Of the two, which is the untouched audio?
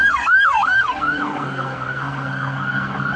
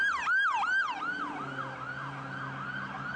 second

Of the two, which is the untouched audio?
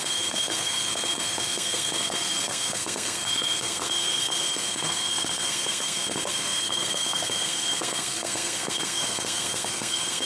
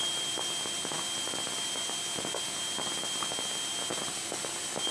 second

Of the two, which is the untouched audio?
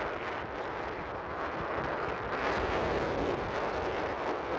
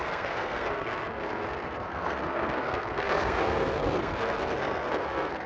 first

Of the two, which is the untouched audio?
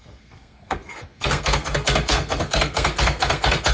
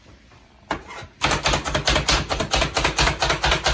second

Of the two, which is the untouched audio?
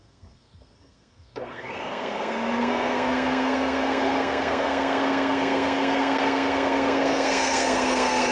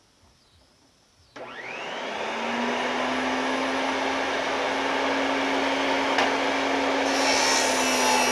second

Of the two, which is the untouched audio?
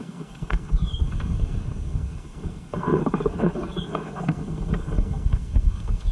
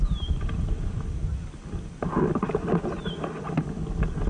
second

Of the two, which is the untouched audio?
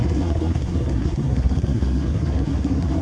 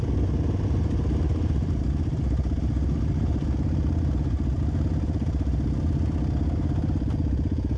second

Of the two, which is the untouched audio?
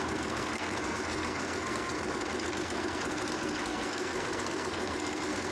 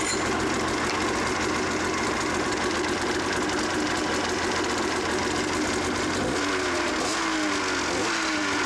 second